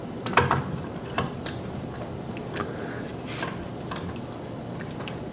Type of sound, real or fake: real